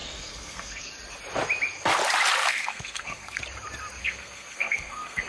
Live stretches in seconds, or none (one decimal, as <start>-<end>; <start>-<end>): 0.9-2.4; 3.4-4.0

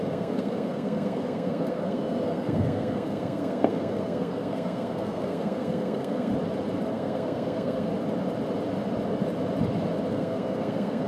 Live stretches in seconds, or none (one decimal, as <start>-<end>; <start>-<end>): 6.3-6.9; 7.9-10.1

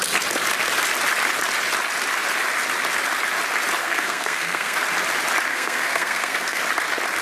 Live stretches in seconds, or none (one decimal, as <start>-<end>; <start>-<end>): 0.0-3.8; 4.8-5.5; 6.6-7.2

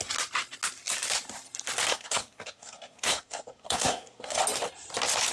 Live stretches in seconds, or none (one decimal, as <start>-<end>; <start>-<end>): 0.0-1.9; 4.4-5.3

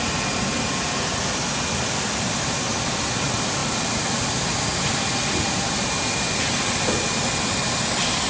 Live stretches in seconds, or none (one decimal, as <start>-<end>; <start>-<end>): 0.0-8.3

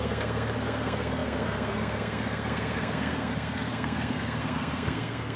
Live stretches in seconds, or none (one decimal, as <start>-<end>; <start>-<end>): none

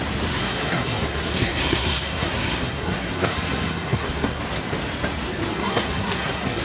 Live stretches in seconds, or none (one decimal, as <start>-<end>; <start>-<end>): 0.0-0.4; 4.4-5.5

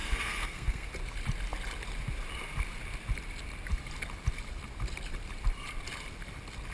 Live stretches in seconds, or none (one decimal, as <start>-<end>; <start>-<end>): 0.9-6.7